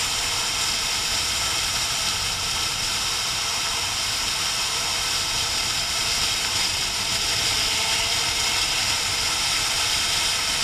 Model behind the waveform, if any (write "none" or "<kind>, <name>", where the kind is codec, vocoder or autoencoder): none